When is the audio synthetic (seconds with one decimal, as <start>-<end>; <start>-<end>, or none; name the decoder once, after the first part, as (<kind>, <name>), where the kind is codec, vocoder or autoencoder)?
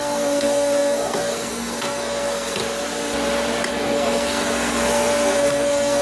0.0-2.6 (codec, SNAC); 3.7-6.0